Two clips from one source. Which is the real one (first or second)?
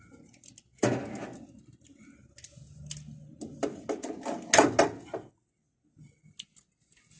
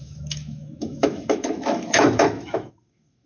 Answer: first